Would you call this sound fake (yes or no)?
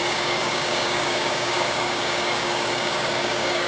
yes